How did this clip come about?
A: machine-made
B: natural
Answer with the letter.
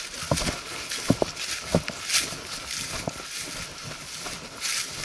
B